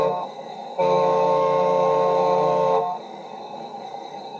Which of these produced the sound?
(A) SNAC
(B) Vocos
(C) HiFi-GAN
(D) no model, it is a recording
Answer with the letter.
A